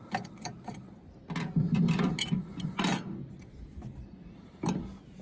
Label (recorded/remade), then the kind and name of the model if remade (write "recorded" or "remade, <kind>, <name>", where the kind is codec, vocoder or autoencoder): recorded